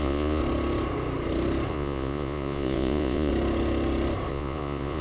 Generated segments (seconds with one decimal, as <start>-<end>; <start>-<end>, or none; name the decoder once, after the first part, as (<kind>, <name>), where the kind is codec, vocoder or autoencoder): 0.0-0.4 (vocoder, Vocos); 1.7-3.3; 4.3-5.0